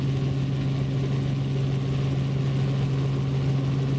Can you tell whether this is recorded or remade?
recorded